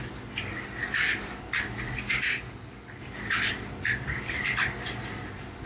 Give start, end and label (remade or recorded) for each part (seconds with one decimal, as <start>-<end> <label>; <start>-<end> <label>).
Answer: 0.0-0.8 recorded; 0.8-1.4 remade; 1.4-2.3 recorded; 2.3-3.0 remade; 3.0-5.7 recorded